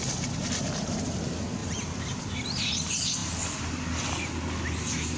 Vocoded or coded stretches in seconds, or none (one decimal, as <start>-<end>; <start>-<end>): 1.6-2.7